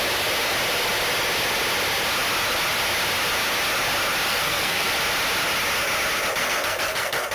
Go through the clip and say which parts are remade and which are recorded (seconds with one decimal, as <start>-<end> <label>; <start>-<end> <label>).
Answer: 0.0-4.3 recorded; 4.3-4.9 remade; 4.9-6.4 recorded; 6.4-7.3 remade